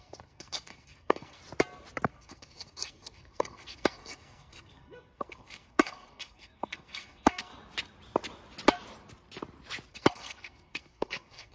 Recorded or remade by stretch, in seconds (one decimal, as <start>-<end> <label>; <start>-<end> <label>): 0.0-1.4 remade; 1.4-2.1 recorded; 2.1-7.5 remade; 7.5-9.9 recorded; 9.9-11.5 remade